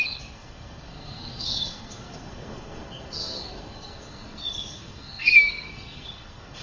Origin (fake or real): fake